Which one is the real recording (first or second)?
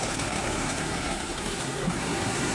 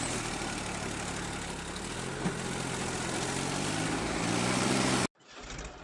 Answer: second